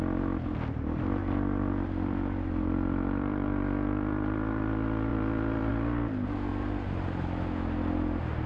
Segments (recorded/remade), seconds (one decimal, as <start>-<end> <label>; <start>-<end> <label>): 0.0-1.2 recorded; 1.2-4.6 remade; 4.6-5.1 recorded; 5.1-5.7 remade; 5.7-6.5 recorded; 6.5-7.6 remade; 7.6-8.5 recorded